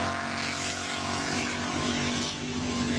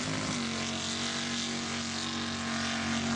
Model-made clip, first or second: first